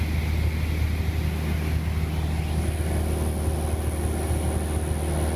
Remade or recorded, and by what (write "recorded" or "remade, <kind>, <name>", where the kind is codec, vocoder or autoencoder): recorded